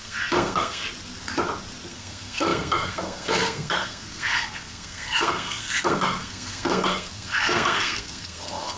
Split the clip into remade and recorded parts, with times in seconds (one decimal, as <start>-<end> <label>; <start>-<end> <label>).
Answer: 0.0-0.8 remade; 0.8-1.9 recorded; 1.9-8.8 remade